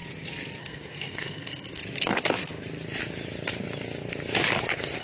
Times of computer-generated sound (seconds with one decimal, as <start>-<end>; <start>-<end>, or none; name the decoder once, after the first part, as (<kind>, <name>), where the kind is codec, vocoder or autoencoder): 0.6-1.8 (codec, SNAC)